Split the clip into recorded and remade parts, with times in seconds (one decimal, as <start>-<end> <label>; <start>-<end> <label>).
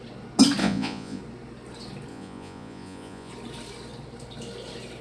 0.0-0.6 recorded; 0.6-1.2 remade; 1.2-2.1 recorded; 2.1-3.3 remade; 3.3-5.0 recorded